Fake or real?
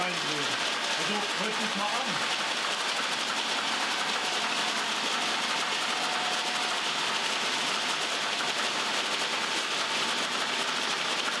real